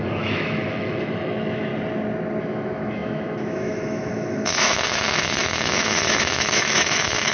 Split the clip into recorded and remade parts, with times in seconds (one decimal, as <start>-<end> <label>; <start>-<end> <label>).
0.0-1.7 remade; 1.7-2.4 recorded; 2.4-7.3 remade